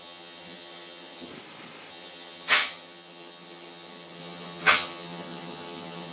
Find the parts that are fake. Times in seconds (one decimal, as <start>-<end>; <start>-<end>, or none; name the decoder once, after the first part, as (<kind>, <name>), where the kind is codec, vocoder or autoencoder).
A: 0.0-1.3 (vocoder, HiFi-GAN); 1.9-6.1